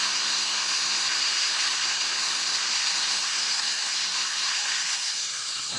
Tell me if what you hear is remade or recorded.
remade